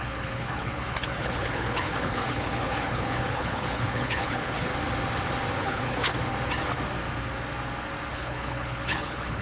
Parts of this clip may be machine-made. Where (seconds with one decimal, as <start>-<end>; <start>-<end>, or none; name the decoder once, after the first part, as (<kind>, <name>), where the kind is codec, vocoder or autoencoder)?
0.0-4.7 (codec, HILCodec); 5.6-6.1; 8.1-9.4